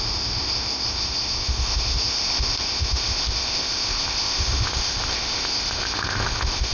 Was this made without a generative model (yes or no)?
no